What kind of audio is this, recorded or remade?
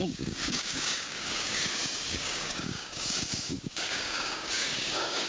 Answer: remade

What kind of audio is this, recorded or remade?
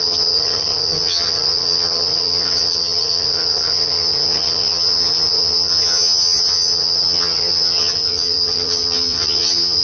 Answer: remade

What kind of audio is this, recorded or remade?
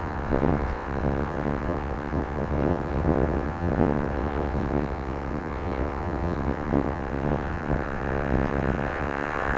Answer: remade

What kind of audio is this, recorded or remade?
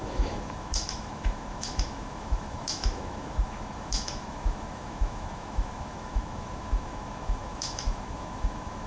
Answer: remade